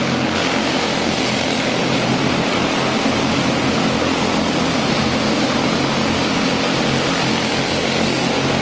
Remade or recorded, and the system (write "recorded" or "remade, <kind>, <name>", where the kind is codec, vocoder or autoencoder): recorded